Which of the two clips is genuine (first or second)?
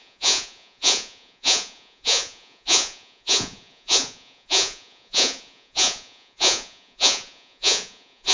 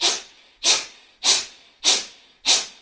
second